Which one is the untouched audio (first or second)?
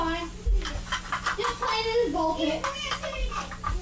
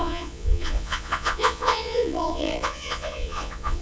first